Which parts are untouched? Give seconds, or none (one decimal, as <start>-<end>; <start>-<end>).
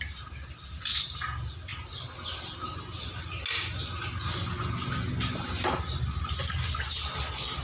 0.0-7.6